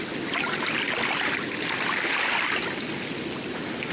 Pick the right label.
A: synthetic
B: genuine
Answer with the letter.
B